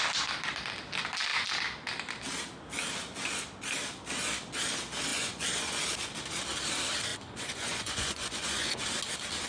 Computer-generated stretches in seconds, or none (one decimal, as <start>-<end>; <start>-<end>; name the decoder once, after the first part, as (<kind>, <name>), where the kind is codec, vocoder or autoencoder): 5.1-5.8 (vocoder, Vocos); 7.1-8.8